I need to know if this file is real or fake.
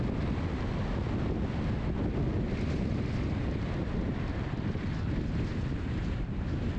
real